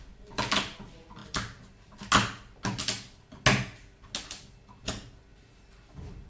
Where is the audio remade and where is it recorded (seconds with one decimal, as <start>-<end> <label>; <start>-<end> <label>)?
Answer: 0.0-6.3 recorded